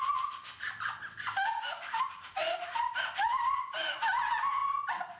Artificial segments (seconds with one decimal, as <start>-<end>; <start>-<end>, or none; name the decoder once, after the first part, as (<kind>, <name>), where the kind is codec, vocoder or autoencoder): none